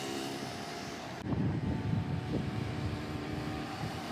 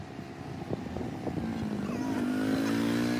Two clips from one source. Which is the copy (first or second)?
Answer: first